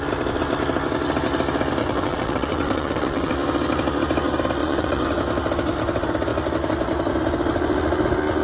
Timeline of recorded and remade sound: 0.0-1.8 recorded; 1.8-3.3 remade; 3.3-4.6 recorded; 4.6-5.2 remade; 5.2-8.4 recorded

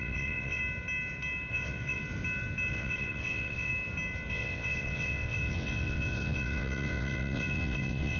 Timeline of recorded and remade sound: 0.0-0.6 remade; 0.6-1.5 recorded; 1.5-2.0 remade; 2.0-2.7 recorded; 2.7-3.7 remade; 3.7-4.3 recorded; 4.3-8.2 remade

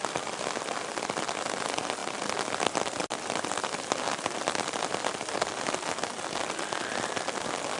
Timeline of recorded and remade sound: 0.0-7.8 recorded

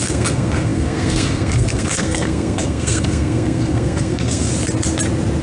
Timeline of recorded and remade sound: 0.0-4.5 remade; 4.5-5.4 recorded

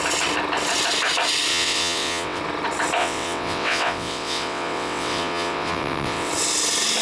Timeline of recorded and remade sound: 0.0-1.5 recorded; 1.5-2.4 remade; 2.4-3.0 recorded; 3.0-6.3 remade; 6.3-7.0 recorded

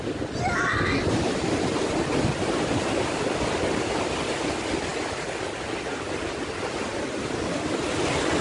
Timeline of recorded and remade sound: 0.0-8.4 recorded

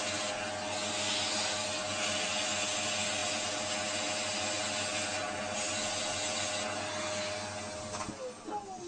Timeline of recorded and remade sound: 0.0-8.9 recorded

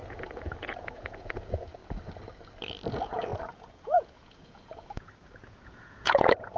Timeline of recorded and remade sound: 0.0-1.8 remade; 1.8-2.9 recorded; 2.9-6.6 remade